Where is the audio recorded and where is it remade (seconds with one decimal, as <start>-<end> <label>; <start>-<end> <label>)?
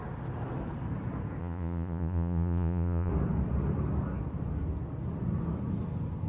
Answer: 0.0-1.4 recorded; 1.4-3.1 remade; 3.1-6.3 recorded